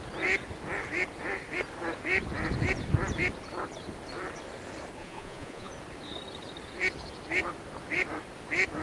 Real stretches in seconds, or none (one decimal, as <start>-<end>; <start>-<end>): 0.0-5.0; 5.7-8.8